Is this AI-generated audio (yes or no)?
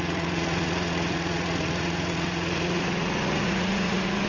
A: yes